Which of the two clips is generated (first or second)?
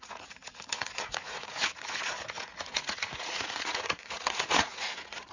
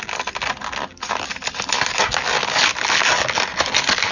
first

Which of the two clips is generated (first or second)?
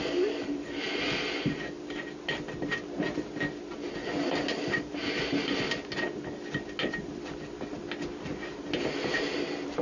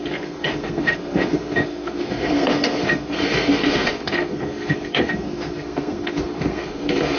second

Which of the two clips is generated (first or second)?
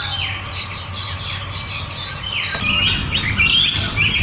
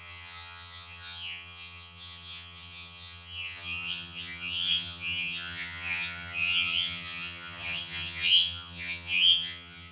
second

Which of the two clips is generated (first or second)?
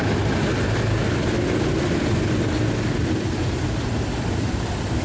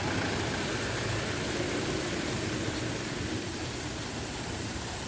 second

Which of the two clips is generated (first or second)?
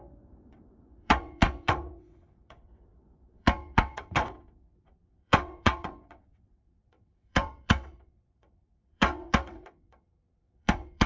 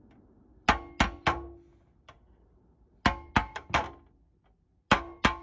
first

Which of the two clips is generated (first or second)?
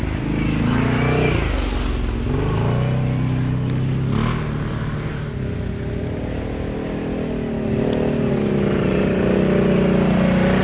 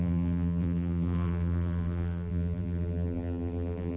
second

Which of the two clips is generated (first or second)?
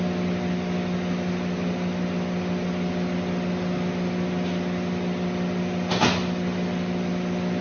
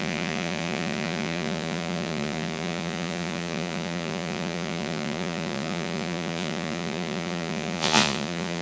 second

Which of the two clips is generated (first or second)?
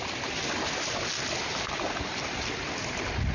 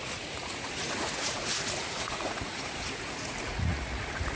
second